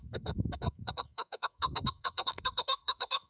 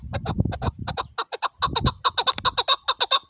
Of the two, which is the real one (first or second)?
second